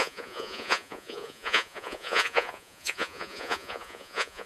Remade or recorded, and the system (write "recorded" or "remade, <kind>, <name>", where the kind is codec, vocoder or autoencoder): remade, vocoder, Vocos